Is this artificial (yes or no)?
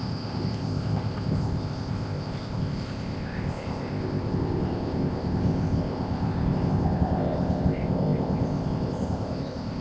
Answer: yes